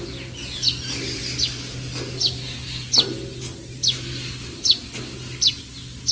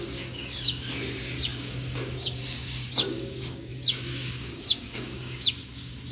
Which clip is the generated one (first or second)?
second